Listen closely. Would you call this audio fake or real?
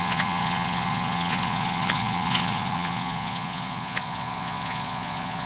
fake